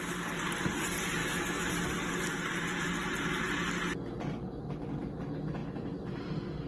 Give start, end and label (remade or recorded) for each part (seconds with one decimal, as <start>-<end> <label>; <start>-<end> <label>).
0.0-1.2 recorded; 1.2-1.7 remade; 1.7-6.7 recorded